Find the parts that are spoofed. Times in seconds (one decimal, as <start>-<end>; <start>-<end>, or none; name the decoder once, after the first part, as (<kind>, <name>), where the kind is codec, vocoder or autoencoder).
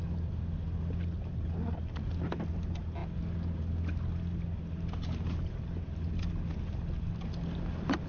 none